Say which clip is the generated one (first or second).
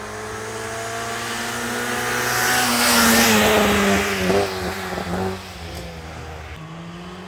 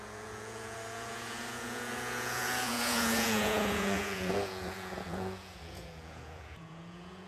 second